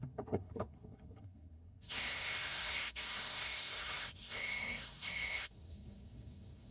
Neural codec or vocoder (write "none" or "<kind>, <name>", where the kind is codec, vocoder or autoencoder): codec, SNAC